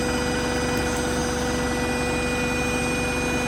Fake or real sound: real